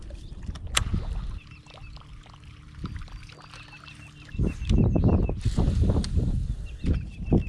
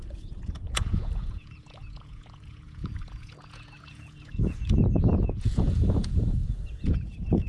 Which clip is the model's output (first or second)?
second